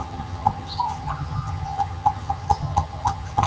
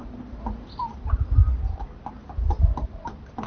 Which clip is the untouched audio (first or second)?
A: second